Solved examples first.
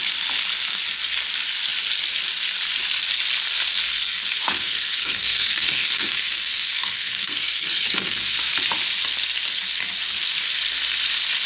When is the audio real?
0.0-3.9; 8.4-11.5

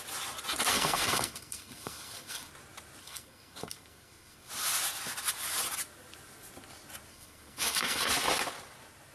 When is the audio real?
0.0-0.7; 2.5-3.0; 4.5-7.1; 8.1-9.1

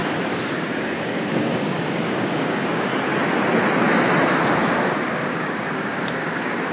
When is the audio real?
0.0-0.6; 2.9-4.6

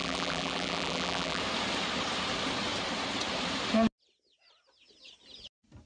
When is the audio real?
1.4-5.9